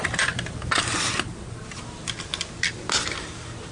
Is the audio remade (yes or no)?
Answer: no